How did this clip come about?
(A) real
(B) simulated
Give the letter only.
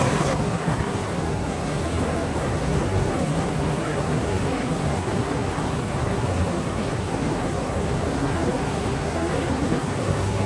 B